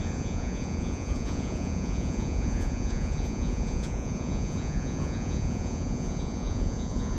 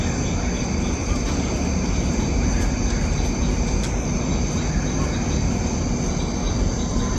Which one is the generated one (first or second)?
first